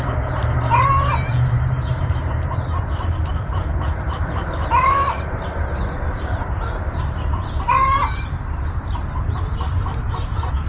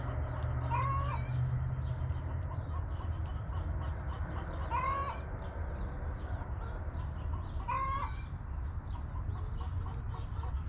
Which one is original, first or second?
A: second